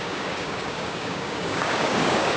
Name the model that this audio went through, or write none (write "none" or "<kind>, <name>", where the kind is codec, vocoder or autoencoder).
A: codec, DAC